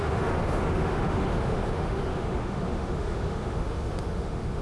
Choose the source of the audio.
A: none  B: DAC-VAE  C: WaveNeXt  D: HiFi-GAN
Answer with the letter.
B